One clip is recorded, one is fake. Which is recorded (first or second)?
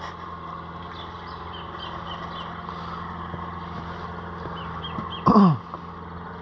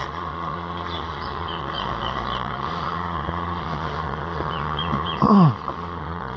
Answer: first